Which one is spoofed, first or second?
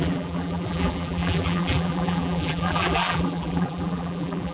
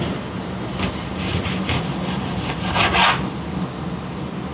first